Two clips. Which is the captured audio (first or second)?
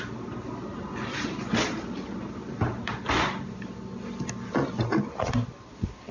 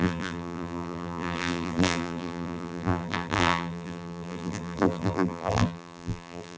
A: first